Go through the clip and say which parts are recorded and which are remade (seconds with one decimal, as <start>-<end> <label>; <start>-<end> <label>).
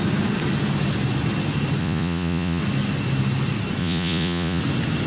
0.0-1.8 recorded; 1.8-2.6 remade; 2.6-3.8 recorded; 3.8-4.6 remade; 4.6-5.1 recorded